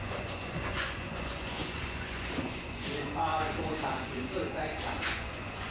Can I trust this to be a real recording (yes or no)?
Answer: no